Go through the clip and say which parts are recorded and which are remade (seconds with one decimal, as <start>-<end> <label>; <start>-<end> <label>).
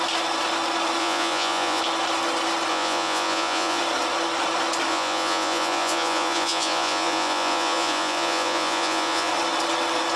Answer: 0.0-1.0 recorded; 1.0-1.8 remade; 1.8-2.7 recorded; 2.7-3.8 remade; 3.8-4.9 recorded; 4.9-9.3 remade; 9.3-10.2 recorded